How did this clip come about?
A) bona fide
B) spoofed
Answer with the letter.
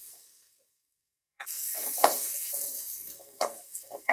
B